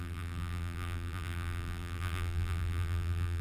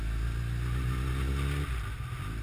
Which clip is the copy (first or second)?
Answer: first